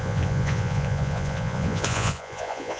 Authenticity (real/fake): fake